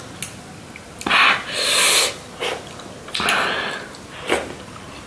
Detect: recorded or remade recorded